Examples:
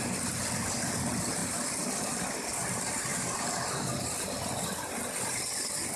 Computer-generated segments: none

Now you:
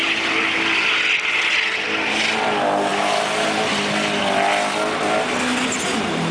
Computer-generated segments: none

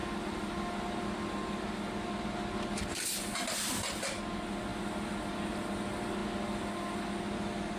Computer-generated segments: none

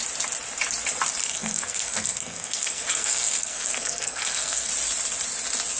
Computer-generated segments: 1.2-4.7 (codec, SNAC)

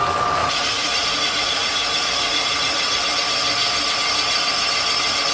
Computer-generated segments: 0.4-3.0 (vocoder, Vocos)

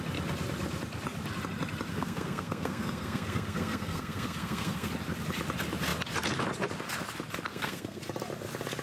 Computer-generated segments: 1.9-4.9 (codec, SNAC); 7.5-8.0